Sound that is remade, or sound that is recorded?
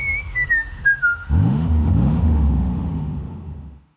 remade